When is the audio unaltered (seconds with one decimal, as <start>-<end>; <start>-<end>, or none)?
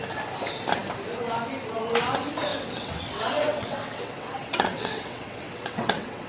0.0-2.5